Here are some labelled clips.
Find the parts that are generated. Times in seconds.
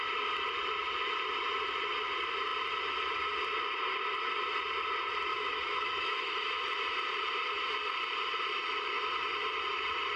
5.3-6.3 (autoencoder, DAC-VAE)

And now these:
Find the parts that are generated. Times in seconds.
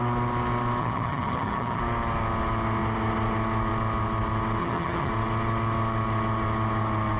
0.8-1.8 (vocoder, HiFi-GAN); 4.6-5.1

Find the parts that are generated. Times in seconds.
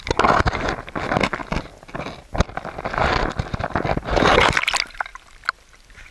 5.1-6.1 (vocoder, BigVGAN v2)